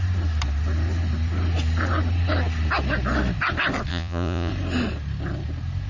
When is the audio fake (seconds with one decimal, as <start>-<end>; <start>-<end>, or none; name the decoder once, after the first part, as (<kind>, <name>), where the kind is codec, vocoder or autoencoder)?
3.9-4.5 (vocoder, Vocos)